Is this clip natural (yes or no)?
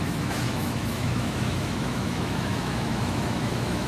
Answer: no